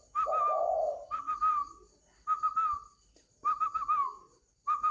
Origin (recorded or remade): recorded